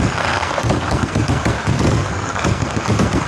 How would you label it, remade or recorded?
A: remade